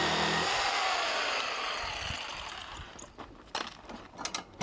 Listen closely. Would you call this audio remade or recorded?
recorded